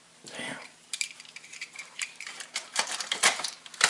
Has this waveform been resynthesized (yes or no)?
yes